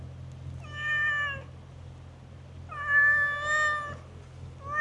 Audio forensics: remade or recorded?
recorded